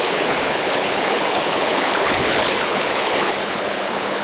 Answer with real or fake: fake